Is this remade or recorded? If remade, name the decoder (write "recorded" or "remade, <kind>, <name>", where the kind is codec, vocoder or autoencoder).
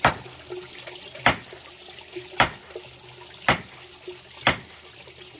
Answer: recorded